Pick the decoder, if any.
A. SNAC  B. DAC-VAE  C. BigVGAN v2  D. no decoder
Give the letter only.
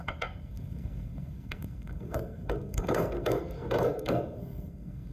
A